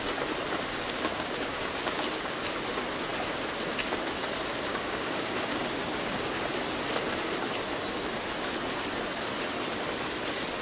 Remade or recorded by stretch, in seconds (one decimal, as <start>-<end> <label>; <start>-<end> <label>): 0.0-0.7 recorded; 0.7-2.4 remade; 2.4-4.7 recorded; 4.7-6.4 remade; 6.4-10.6 recorded